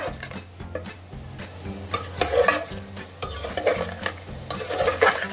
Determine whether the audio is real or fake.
real